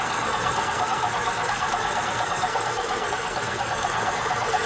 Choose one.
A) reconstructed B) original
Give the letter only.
A